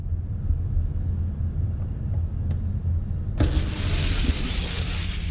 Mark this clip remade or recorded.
recorded